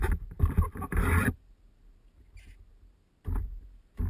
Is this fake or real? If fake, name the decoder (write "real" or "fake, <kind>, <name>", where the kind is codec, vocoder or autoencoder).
real